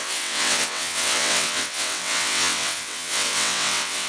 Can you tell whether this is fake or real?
fake